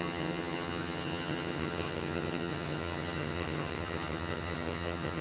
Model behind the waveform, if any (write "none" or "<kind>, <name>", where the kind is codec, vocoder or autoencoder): vocoder, HiFi-GAN